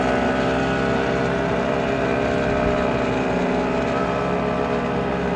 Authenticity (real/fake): real